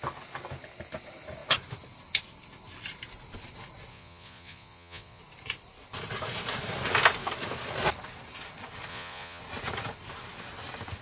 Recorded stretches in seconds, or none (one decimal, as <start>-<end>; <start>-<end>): 0.0-3.9; 5.2-8.9; 9.4-11.0